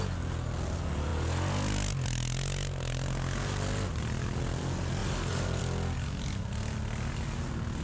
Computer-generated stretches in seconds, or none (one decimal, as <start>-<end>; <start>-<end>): 5.0-5.6